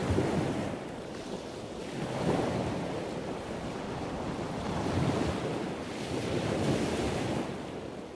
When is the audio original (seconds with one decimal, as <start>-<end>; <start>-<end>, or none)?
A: 0.0-8.2